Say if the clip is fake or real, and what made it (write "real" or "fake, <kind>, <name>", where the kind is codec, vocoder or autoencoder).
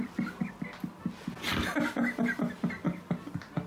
real